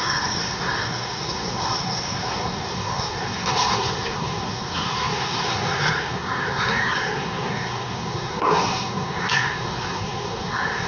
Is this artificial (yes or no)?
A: yes